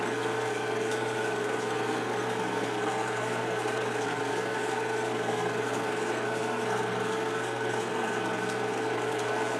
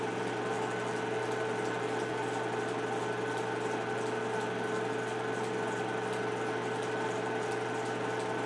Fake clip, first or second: first